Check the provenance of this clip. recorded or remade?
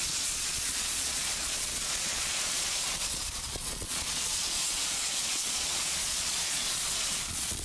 remade